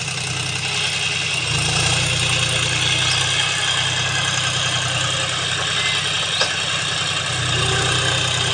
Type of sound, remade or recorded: recorded